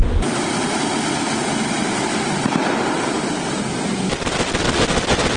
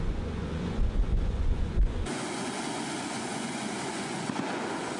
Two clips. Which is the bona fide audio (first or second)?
first